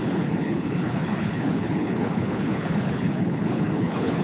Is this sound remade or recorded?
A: remade